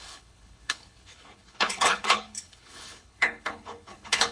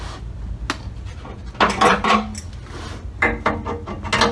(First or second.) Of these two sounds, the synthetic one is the first